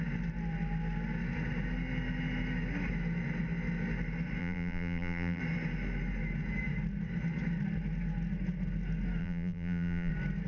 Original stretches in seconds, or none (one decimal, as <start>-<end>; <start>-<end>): 0.0-4.4; 5.4-9.2; 10.1-10.5